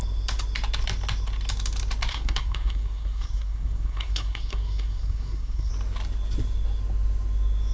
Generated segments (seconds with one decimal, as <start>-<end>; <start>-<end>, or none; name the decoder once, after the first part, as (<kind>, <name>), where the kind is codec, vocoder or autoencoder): 2.1-5.7 (codec, SNAC)